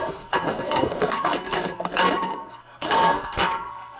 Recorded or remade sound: remade